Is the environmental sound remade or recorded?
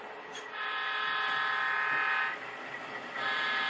recorded